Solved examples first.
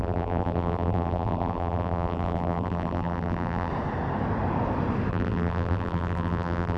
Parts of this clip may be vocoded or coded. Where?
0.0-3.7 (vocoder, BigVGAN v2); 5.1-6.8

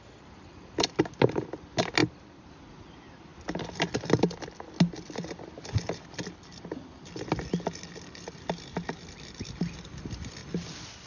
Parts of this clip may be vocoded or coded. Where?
none

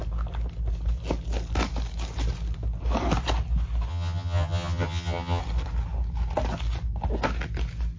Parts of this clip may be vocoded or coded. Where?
3.9-5.4 (vocoder, HiFi-GAN)